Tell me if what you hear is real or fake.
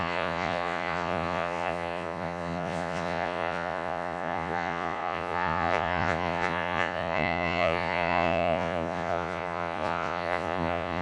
fake